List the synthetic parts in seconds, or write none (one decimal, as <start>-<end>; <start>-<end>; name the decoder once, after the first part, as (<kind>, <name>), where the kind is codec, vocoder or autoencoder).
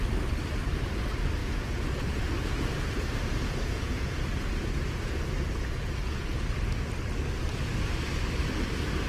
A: 1.4-6.5 (vocoder, Vocos)